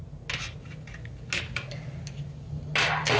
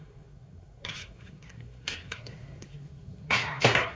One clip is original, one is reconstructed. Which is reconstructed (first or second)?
second